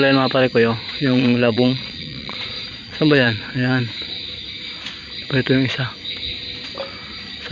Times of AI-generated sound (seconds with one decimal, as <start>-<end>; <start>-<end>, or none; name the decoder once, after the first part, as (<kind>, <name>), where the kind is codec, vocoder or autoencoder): 0.9-3.8 (vocoder, Vocos)